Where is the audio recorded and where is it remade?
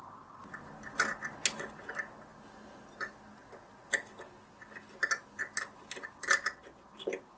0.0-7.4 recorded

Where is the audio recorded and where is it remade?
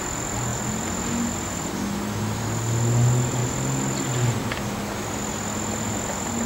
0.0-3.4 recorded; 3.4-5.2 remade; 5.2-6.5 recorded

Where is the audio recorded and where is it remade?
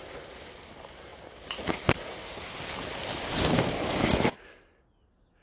0.0-5.4 recorded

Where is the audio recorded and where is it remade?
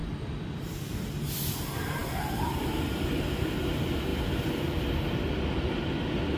0.0-6.4 recorded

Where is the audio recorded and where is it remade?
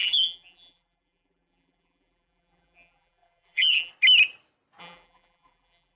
0.0-3.9 remade; 3.9-4.8 recorded; 4.8-6.0 remade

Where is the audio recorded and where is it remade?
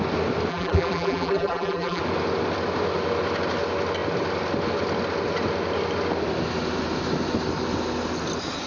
0.0-0.5 recorded; 0.5-2.0 remade; 2.0-8.7 recorded